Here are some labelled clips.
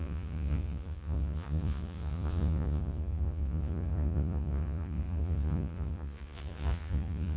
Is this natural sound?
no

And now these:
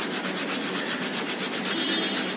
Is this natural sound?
yes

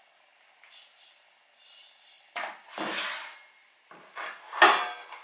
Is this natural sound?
yes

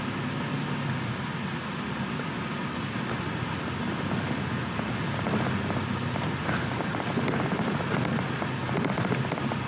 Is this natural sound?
yes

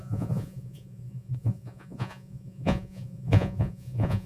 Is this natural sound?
no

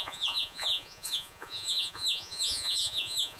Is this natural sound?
no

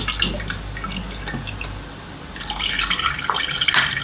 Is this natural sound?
yes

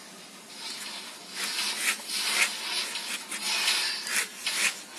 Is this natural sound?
yes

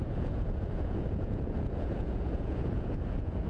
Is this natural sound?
no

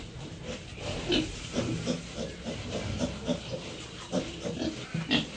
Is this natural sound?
yes